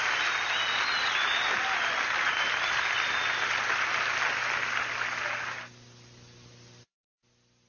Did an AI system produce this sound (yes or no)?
no